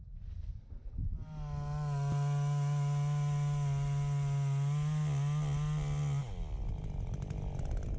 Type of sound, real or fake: real